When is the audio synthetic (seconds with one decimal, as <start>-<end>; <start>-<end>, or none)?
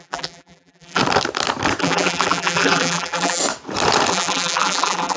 0.0-1.0; 1.8-3.4; 4.1-5.2